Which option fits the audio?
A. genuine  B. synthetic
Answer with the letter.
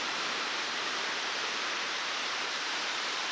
B